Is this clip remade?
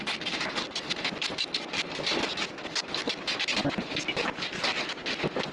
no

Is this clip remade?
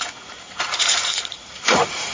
yes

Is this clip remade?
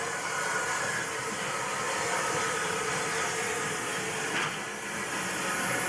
no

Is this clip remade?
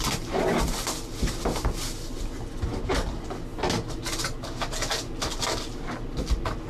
no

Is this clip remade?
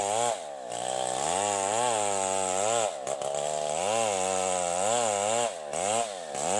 no